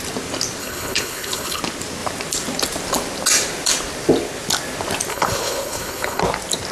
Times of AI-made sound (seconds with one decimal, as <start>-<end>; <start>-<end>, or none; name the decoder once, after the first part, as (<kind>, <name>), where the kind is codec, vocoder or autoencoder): 0.6-1.6 (codec, HILCodec); 5.1-6.2